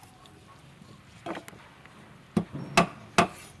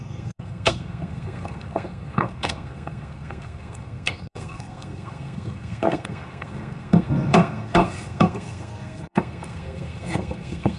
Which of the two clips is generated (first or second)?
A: second